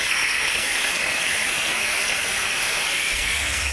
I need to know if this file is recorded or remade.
remade